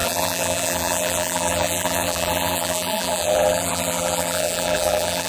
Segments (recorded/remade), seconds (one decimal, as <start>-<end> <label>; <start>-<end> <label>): 0.0-5.3 remade